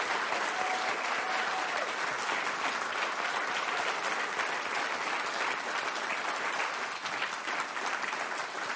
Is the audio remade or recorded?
recorded